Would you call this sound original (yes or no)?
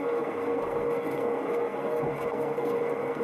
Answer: no